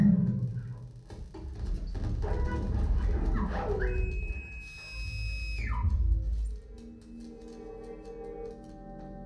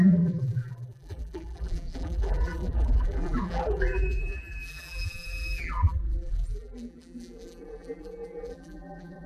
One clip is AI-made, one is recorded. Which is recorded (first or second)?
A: first